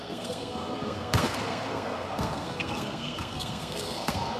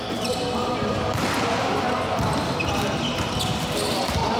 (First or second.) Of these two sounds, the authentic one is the second